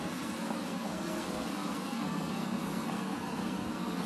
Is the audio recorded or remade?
remade